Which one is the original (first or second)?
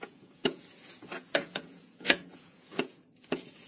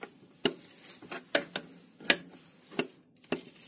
second